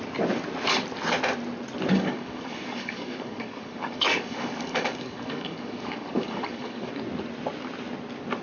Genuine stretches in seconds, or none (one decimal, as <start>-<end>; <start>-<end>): 0.0-1.9; 6.9-8.4